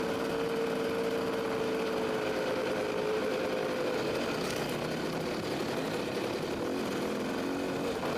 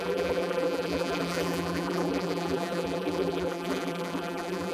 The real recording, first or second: first